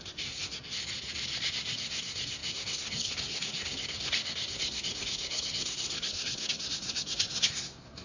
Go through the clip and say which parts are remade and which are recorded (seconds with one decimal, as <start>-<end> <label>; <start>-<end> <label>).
0.0-0.8 remade; 0.8-1.5 recorded; 1.5-8.0 remade